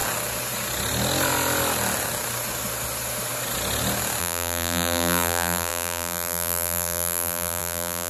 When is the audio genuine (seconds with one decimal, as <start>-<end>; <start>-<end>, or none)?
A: 0.0-4.2